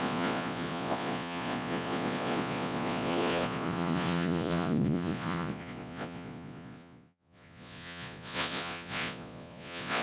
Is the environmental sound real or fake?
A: fake